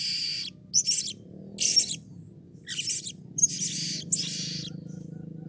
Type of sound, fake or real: real